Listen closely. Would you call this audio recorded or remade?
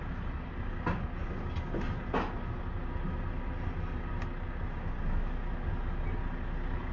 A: recorded